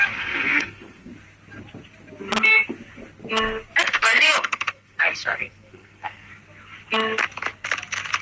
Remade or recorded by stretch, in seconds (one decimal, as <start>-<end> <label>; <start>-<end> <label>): 0.0-1.1 remade; 1.1-3.8 recorded; 3.8-6.3 remade; 6.3-8.2 recorded

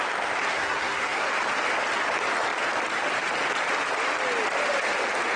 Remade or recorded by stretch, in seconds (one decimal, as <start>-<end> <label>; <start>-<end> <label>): 0.0-0.5 recorded; 0.5-1.3 remade; 1.3-5.4 recorded